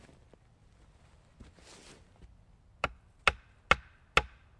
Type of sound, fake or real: real